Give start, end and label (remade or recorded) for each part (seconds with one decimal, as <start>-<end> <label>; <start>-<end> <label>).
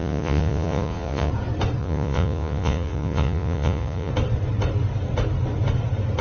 0.0-1.3 remade; 1.3-1.8 recorded; 1.8-4.1 remade; 4.1-6.2 recorded